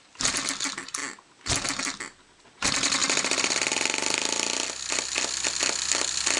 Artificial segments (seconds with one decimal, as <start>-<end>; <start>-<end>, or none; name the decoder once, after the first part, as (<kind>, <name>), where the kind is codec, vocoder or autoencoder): none